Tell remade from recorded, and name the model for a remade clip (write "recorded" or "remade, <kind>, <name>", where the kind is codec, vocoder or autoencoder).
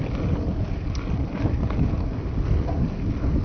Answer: recorded